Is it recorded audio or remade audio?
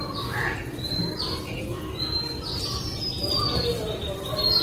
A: recorded